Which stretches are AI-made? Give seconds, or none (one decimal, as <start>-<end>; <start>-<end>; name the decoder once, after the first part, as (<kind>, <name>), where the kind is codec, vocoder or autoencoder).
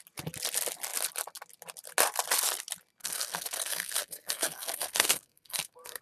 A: 3.0-6.0 (codec, SNAC)